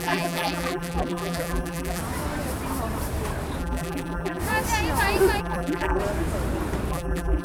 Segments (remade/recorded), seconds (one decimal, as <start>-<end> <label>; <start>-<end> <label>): 0.0-2.0 remade; 2.0-3.6 recorded; 3.6-4.4 remade; 4.4-5.4 recorded; 5.4-6.0 remade; 6.0-6.9 recorded; 6.9-7.4 remade

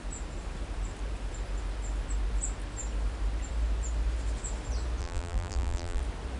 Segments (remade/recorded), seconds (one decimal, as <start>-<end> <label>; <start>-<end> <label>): 0.0-5.0 recorded; 5.0-6.0 remade; 6.0-6.4 recorded

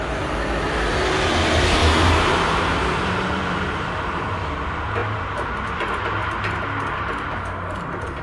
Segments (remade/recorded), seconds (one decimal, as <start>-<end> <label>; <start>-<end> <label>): 0.0-1.8 recorded; 1.8-4.2 remade; 4.2-5.0 recorded; 5.0-5.8 remade; 5.8-8.2 recorded

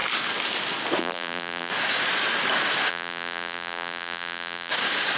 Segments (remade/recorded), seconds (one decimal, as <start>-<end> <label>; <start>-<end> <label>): 0.0-1.0 recorded; 1.0-1.7 remade; 1.7-2.9 recorded; 2.9-4.7 remade; 4.7-5.2 recorded

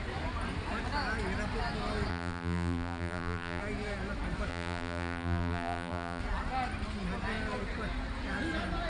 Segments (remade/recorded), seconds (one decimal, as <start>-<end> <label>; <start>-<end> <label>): 0.0-2.1 recorded; 2.1-3.6 remade; 3.6-4.5 recorded; 4.5-6.2 remade; 6.2-8.9 recorded

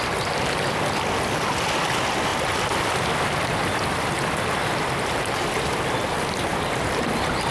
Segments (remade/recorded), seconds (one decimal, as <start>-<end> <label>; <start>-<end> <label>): 0.0-6.5 recorded; 6.5-7.1 remade; 7.1-7.5 recorded